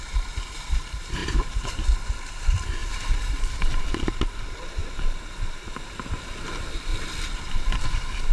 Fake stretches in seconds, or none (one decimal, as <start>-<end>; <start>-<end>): 0.0-6.9; 7.4-8.3

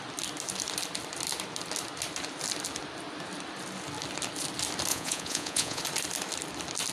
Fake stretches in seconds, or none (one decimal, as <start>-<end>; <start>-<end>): 4.9-5.8

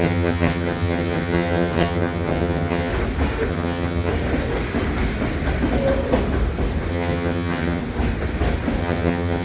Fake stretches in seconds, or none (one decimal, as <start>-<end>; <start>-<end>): 0.0-2.9; 3.5-4.1; 6.9-7.8; 8.8-9.4